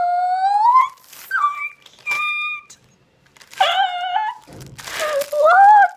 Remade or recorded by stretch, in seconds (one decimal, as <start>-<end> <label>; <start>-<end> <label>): 0.0-6.0 recorded